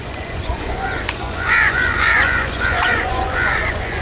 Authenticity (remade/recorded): remade